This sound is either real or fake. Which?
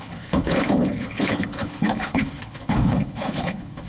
fake